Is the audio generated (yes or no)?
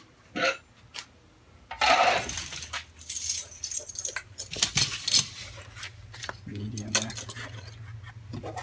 no